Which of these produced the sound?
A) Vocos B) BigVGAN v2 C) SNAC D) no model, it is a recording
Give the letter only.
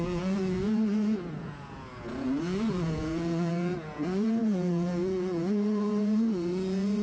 A